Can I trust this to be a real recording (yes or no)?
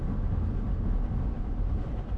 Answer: yes